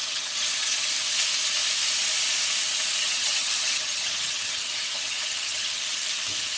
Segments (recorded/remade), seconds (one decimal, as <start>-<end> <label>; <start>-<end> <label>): 0.0-0.9 remade; 0.9-3.0 recorded; 3.0-5.8 remade; 5.8-6.6 recorded